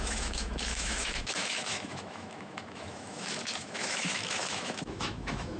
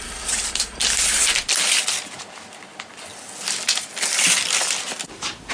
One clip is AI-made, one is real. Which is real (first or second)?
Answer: second